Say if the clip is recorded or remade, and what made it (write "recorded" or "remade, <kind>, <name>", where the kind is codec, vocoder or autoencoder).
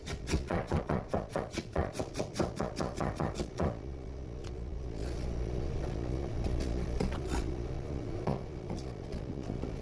remade, vocoder, Vocos